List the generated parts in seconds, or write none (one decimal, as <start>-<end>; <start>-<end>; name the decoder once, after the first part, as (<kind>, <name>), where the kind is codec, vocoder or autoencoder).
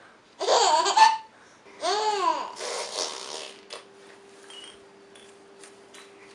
0.5-1.2 (vocoder, BigVGAN v2); 2.3-3.0